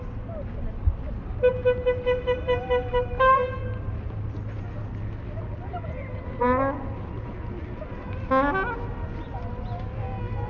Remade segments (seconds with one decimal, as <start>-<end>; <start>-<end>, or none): none